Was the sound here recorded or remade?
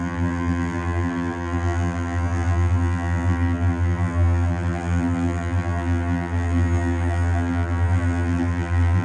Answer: remade